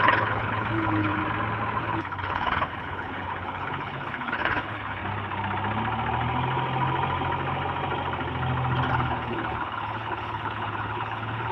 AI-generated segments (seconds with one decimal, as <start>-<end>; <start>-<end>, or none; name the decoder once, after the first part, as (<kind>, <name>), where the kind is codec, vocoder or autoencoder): 0.0-1.2 (codec, HILCodec); 1.8-5.0; 8.9-11.5